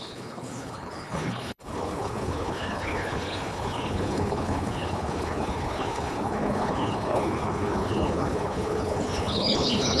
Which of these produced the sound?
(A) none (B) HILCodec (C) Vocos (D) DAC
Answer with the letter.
B